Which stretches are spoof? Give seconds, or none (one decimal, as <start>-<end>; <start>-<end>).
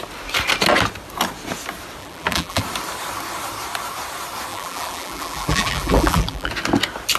2.0-2.6; 4.5-6.5